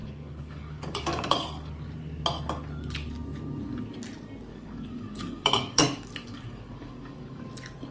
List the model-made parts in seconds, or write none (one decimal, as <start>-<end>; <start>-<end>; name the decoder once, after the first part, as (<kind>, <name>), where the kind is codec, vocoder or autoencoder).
0.0-1.7 (codec, DAC); 4.5-7.5

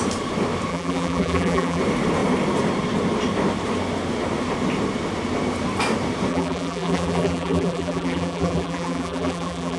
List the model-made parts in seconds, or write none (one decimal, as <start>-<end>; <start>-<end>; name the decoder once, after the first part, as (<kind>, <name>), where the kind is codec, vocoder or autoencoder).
0.7-1.8 (vocoder, BigVGAN v2); 6.3-9.8

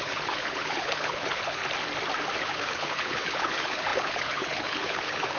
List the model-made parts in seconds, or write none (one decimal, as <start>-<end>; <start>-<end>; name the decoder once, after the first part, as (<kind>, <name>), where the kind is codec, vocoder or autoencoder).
0.0-1.6 (codec, HILCodec); 2.4-5.4

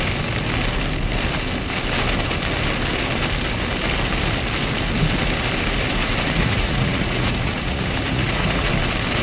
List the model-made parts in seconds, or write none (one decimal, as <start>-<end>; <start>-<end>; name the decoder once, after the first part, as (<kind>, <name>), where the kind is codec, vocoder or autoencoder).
6.0-8.7 (vocoder, Vocos)

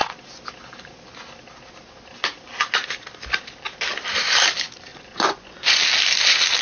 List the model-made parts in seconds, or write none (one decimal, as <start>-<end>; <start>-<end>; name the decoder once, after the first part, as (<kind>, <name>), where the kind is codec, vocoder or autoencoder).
4.9-5.8 (vocoder, Vocos)